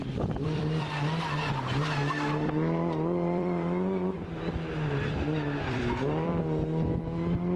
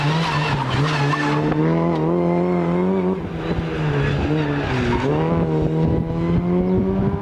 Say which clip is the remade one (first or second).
first